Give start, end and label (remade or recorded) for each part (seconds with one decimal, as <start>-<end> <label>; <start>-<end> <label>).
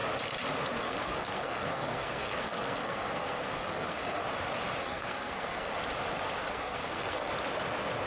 0.0-0.8 recorded; 0.8-4.2 remade; 4.2-4.8 recorded; 4.8-5.7 remade; 5.7-6.5 recorded; 6.5-7.3 remade; 7.3-8.1 recorded